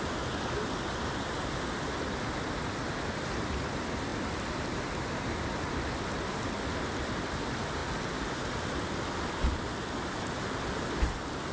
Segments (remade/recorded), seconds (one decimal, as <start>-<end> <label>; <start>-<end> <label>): 0.0-11.5 recorded

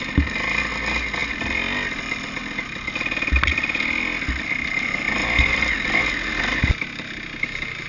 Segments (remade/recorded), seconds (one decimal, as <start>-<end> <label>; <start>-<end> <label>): 0.0-7.9 recorded